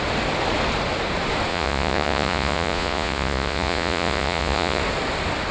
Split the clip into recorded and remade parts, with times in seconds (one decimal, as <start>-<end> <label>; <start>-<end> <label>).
0.0-1.5 recorded; 1.5-4.8 remade; 4.8-5.5 recorded